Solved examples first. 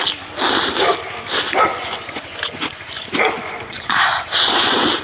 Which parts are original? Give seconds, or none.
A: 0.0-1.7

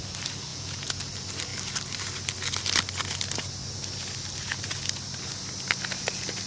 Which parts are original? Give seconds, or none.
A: 0.0-0.5; 1.0-6.5

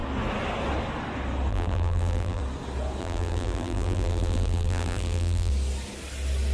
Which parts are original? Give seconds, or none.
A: 0.0-1.5; 2.4-3.0; 5.5-6.5

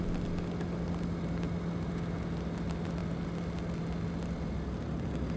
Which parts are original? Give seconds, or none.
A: 0.0-5.4